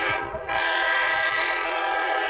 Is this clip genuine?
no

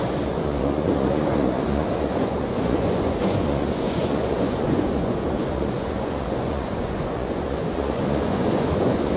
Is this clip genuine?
no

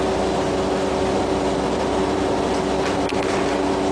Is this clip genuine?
yes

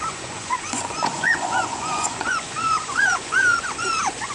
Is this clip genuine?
no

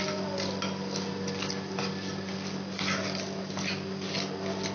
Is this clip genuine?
yes